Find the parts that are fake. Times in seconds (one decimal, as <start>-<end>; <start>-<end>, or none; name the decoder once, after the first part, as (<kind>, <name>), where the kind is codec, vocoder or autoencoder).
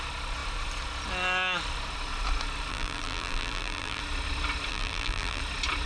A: 2.7-4.0 (vocoder, BigVGAN v2); 4.7-5.4